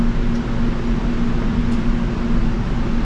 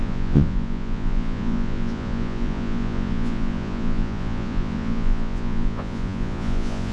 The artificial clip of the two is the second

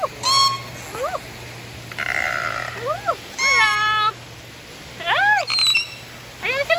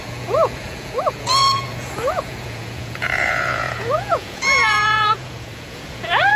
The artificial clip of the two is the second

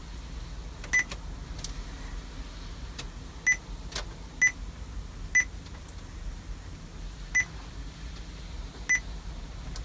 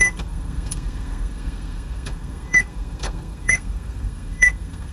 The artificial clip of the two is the second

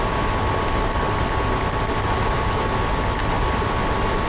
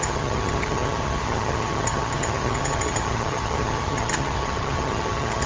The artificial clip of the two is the second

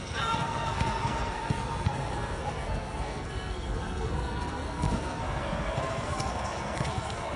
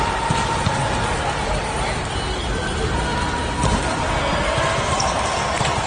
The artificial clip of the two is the first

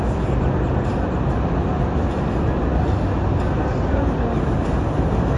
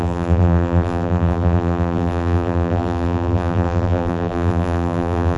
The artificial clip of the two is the second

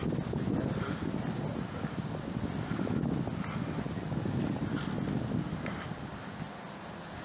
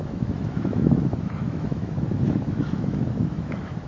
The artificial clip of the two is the second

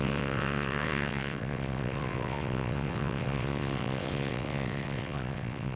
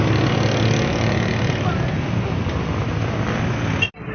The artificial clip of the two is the first